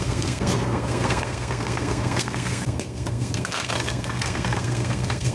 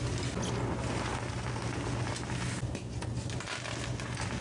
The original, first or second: second